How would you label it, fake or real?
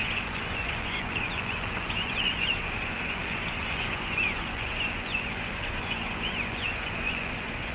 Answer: fake